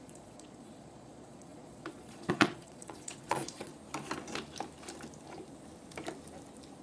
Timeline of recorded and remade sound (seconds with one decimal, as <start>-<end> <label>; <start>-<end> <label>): 0.0-3.7 remade; 3.7-6.8 recorded